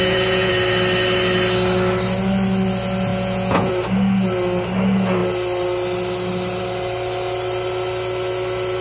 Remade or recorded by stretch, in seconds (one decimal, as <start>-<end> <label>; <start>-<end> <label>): 0.0-0.5 remade; 0.5-3.1 recorded; 3.1-3.7 remade; 3.7-8.8 recorded